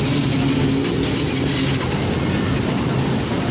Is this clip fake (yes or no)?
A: no